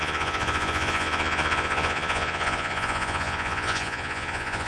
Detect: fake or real fake